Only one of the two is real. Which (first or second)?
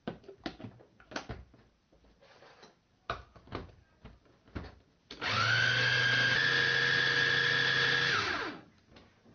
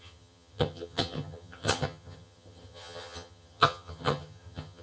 first